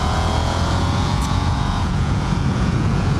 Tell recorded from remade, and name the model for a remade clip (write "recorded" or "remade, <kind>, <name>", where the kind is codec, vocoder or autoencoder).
remade, vocoder, Vocos